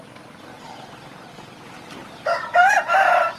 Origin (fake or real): real